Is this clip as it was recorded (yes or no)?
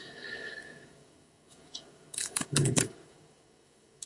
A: no